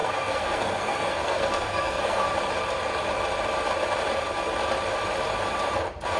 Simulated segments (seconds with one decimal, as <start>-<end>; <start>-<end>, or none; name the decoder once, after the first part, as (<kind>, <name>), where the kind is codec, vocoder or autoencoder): 0.0-2.3 (codec, SNAC)